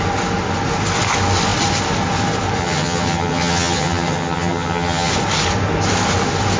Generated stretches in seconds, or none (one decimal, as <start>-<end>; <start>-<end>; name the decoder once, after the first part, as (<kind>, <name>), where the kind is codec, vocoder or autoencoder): 2.6-5.1 (vocoder, HiFi-GAN)